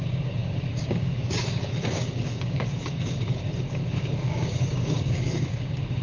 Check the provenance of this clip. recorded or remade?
remade